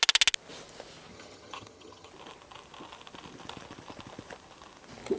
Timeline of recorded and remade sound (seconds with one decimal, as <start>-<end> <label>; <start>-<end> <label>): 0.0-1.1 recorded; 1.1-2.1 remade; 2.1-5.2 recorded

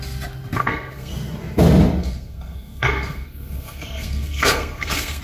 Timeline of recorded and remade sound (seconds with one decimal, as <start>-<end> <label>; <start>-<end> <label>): 0.0-0.6 recorded; 0.6-1.1 remade; 1.1-2.0 recorded; 2.0-5.2 remade

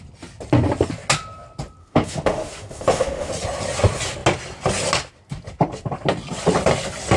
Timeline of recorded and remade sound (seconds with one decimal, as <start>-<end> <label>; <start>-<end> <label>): 0.0-1.8 recorded; 1.8-3.3 remade; 3.3-7.2 recorded

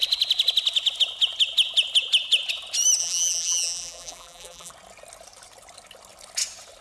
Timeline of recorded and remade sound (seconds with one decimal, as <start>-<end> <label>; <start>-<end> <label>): 0.0-3.0 recorded; 3.0-4.7 remade; 4.7-6.8 recorded